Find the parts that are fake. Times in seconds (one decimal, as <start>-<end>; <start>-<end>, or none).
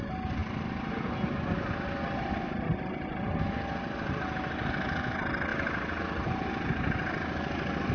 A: none